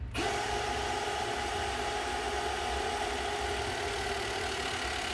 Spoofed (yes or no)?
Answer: no